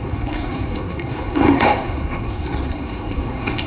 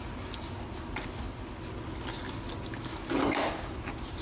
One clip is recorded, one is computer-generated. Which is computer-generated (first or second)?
first